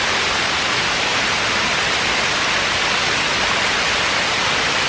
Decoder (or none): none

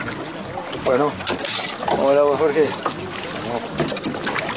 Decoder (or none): none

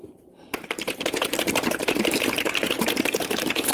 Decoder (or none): vocoder, BigVGAN v2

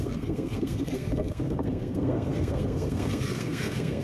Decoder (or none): codec, SNAC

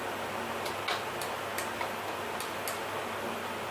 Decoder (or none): none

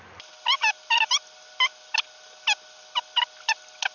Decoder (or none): none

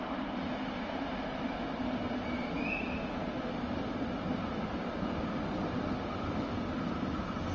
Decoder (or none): none